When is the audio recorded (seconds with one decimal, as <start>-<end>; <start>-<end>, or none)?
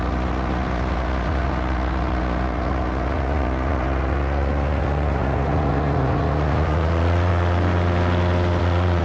7.3-8.6